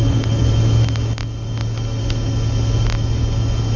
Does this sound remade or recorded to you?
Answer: recorded